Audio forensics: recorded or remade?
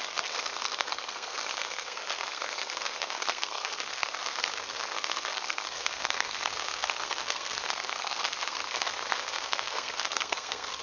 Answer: remade